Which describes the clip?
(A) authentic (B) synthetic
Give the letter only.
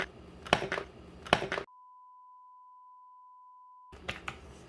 A